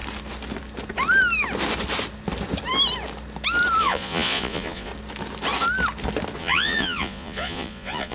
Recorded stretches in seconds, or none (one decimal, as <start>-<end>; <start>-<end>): 0.0-3.8; 4.9-6.4